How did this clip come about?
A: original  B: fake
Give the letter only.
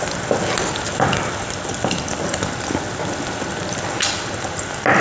A